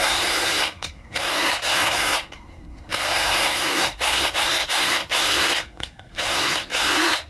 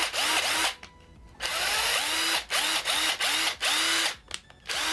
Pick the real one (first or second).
second